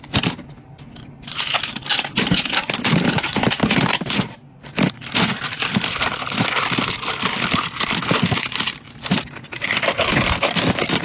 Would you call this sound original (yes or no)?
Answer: yes